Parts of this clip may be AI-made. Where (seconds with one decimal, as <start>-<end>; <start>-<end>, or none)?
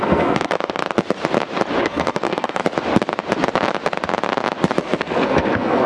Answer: 0.0-0.8; 1.8-2.6; 4.8-5.9